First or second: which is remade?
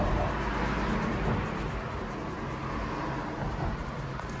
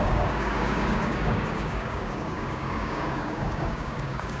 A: second